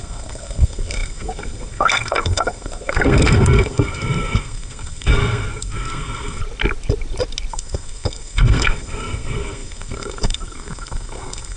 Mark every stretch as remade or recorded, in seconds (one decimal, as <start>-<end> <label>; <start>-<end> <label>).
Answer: 0.0-6.4 remade; 6.4-7.5 recorded; 7.5-11.6 remade